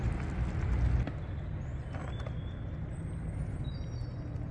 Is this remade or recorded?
recorded